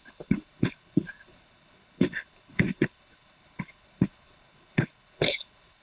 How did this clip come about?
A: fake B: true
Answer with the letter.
A